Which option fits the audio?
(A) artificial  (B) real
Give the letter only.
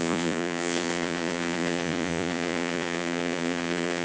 A